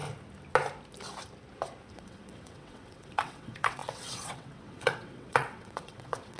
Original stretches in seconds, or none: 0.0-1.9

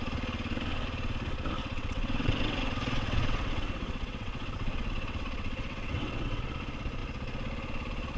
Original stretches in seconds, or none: 0.0-1.6; 6.4-8.2

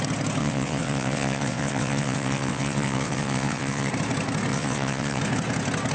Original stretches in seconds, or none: 0.0-0.4; 3.9-4.5; 5.2-5.9